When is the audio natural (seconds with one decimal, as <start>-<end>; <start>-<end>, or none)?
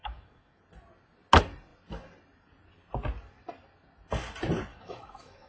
0.6-4.7